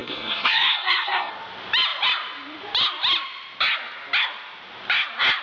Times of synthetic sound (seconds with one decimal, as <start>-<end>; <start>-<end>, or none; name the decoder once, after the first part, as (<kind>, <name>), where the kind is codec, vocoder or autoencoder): 0.0-1.3 (codec, SNAC)